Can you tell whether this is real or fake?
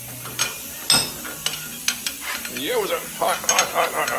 real